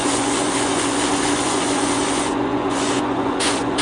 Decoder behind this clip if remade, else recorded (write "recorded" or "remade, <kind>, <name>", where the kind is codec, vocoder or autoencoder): remade, vocoder, Vocos